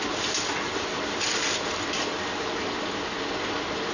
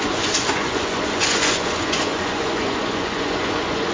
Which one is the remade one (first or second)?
second